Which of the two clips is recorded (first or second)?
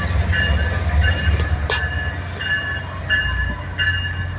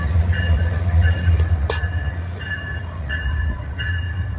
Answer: first